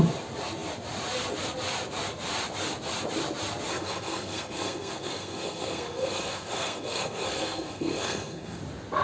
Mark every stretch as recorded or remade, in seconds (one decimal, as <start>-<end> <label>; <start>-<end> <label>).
0.0-3.7 recorded; 3.7-8.6 remade; 8.6-9.0 recorded